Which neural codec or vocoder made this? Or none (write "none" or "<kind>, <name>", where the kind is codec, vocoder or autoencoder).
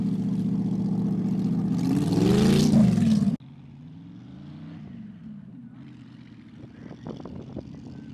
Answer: none